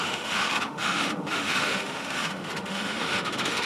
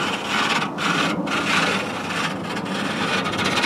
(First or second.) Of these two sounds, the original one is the second